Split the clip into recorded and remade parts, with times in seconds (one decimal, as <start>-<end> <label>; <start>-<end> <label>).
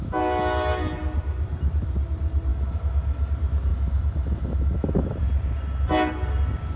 0.0-2.5 recorded; 2.5-3.3 remade; 3.3-3.7 recorded; 3.7-5.2 remade; 5.2-6.8 recorded